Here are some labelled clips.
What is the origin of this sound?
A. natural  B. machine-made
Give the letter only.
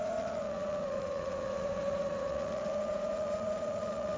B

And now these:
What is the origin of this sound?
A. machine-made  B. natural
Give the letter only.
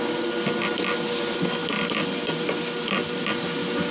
B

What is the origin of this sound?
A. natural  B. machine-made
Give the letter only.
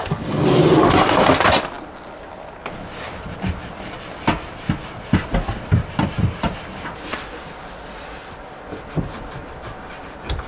A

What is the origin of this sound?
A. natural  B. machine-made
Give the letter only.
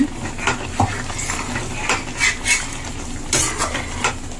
A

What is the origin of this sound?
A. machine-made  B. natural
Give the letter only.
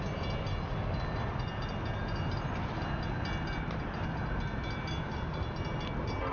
B